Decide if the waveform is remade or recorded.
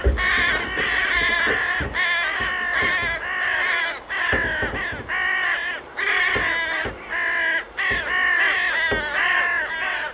recorded